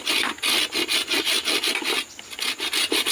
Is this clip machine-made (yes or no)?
no